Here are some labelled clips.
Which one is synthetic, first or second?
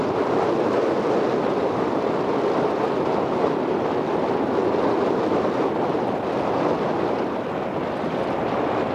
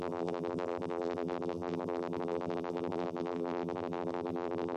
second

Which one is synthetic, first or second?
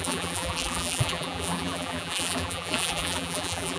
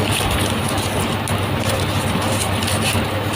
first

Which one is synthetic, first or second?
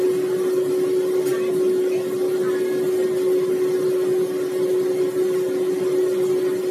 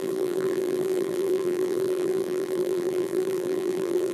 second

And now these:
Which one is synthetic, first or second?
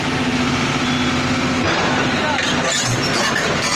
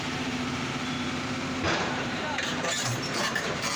second